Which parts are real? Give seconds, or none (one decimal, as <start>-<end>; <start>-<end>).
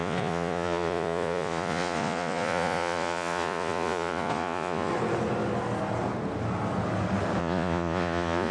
4.9-7.4